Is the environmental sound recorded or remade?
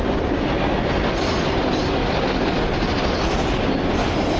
recorded